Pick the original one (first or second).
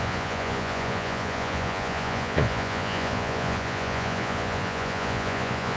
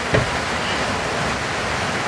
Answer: second